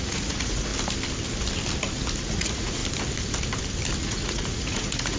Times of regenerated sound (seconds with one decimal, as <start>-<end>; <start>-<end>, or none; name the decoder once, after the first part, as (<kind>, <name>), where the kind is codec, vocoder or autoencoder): 0.0-0.7 (vocoder, Vocos); 2.2-2.8; 4.0-5.2